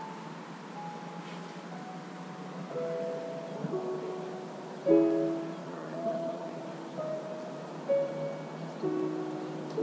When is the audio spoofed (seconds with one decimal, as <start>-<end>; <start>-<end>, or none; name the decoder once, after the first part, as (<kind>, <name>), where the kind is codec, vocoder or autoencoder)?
5.6-6.6 (vocoder, Vocos)